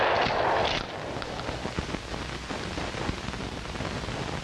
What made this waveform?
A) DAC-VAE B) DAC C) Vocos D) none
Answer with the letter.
D